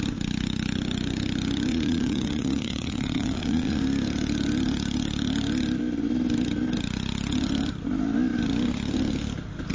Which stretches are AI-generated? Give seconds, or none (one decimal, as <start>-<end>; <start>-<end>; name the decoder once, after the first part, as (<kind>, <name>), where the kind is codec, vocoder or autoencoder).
1.7-3.8 (vocoder, Vocos)